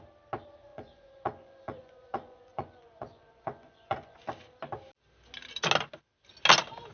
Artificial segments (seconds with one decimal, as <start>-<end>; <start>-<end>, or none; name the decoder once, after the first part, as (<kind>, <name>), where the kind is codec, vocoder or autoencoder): 0.7-4.2 (vocoder, Vocos)